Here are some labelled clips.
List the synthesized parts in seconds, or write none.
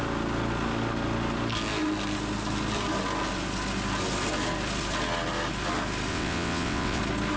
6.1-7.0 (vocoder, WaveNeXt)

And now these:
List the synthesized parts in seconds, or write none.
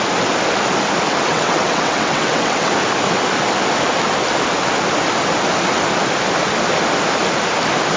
1.3-2.7 (vocoder, WaveNeXt)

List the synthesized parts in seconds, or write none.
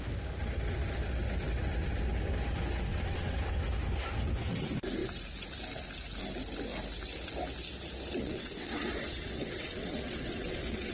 2.9-3.6 (vocoder, WaveNeXt); 8.2-10.9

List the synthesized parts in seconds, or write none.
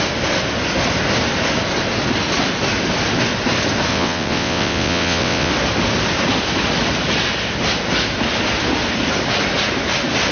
3.9-5.5 (vocoder, WaveNeXt)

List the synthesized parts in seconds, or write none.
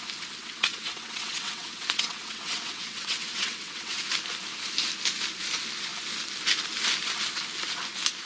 0.4-4.0 (vocoder, WaveNeXt)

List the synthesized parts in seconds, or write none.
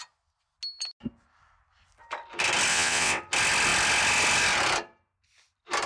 2.7-3.2 (vocoder, WaveNeXt)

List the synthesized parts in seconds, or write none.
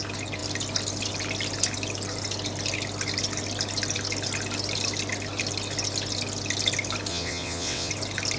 7.1-7.9 (vocoder, WaveNeXt)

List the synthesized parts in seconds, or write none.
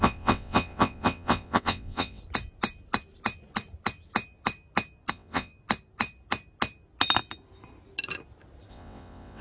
0.0-2.2 (vocoder, WaveNeXt); 5.1-5.5; 8.7-9.4